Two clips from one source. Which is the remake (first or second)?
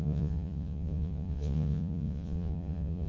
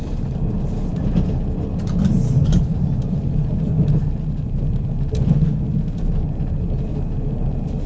first